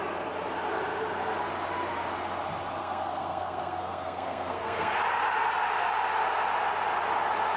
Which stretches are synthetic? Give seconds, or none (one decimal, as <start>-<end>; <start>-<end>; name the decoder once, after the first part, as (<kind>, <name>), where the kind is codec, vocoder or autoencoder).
2.8-5.0 (codec, SNAC)